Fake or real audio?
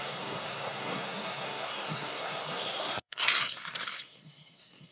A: fake